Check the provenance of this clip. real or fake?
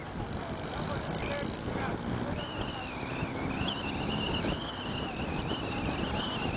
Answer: real